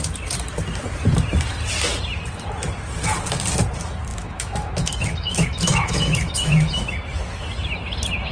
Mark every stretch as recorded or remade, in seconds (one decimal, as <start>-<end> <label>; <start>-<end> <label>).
0.0-4.1 recorded; 4.1-6.7 remade; 6.7-8.3 recorded